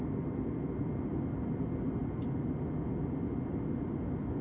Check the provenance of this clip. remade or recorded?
recorded